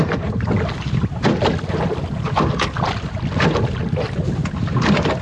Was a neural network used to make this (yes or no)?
no